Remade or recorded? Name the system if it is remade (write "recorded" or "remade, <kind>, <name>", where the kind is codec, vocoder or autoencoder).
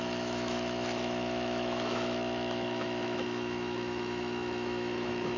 remade, autoencoder, DAC-VAE